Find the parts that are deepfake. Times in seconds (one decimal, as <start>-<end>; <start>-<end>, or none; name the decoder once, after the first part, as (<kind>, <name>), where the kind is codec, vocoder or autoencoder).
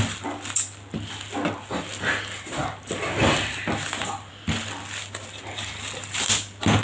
none